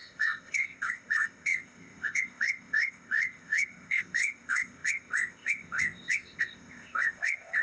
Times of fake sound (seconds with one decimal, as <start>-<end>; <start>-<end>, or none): 0.0-7.6